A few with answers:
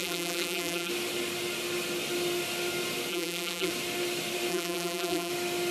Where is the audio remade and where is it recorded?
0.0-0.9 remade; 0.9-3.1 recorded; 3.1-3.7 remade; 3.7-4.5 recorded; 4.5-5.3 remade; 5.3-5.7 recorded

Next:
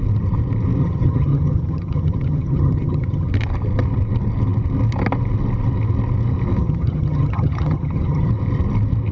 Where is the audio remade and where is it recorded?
0.0-0.8 recorded; 0.8-3.3 remade; 3.3-6.6 recorded; 6.6-8.3 remade; 8.3-9.1 recorded

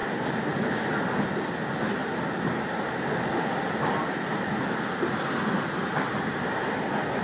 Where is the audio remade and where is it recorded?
0.0-7.2 recorded

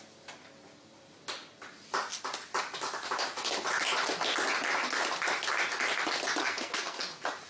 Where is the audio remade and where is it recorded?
0.0-6.4 recorded; 6.4-7.0 remade; 7.0-7.5 recorded

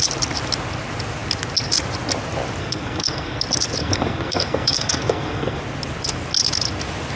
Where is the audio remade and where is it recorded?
0.0-2.6 recorded; 2.6-3.4 remade; 3.4-3.8 recorded; 3.8-5.6 remade; 5.6-7.2 recorded

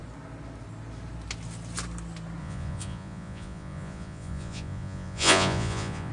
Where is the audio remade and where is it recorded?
0.0-2.4 recorded; 2.4-6.1 remade